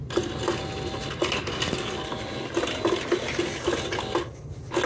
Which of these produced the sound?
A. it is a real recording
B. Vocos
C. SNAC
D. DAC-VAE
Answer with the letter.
A